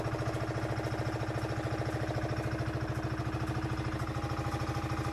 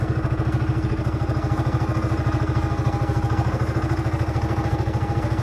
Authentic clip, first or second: first